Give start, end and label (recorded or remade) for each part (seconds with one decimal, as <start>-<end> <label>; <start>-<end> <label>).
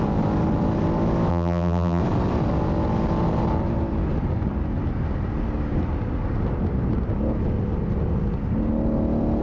0.0-1.3 recorded; 1.3-2.0 remade; 2.0-9.4 recorded